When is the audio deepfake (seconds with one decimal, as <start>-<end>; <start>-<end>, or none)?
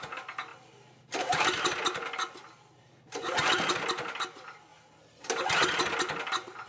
none